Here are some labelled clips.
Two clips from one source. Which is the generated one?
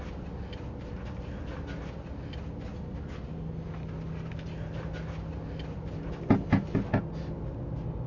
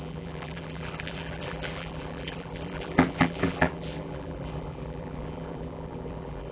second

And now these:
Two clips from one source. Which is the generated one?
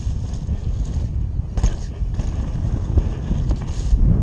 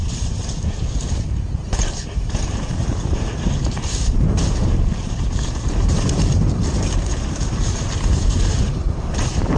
second